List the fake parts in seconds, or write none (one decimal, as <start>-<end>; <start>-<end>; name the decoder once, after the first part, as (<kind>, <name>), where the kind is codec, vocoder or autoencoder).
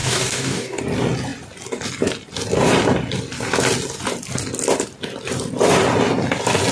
0.0-0.8 (codec, DAC)